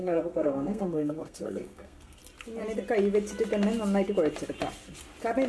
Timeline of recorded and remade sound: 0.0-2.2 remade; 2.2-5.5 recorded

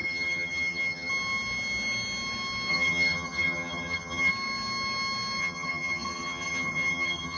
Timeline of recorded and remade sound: 0.0-1.1 remade; 1.1-2.7 recorded; 2.7-4.3 remade; 4.3-5.4 recorded; 5.4-7.4 remade